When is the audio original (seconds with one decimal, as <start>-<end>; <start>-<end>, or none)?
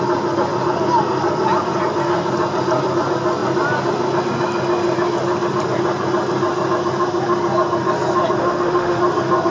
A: 0.0-8.4; 9.0-9.5